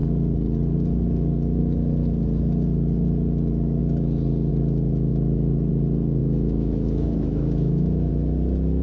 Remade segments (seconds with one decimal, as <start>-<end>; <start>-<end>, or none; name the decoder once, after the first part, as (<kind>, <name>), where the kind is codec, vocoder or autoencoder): 5.1-5.7 (autoencoder, DAC-VAE); 6.2-8.1